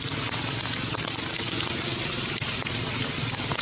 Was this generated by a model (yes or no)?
no